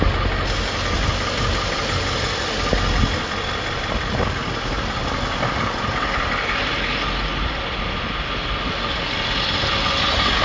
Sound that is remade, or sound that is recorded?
recorded